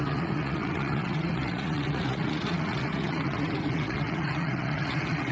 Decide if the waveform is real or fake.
fake